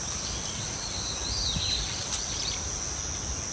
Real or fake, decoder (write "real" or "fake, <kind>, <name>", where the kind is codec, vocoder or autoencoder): real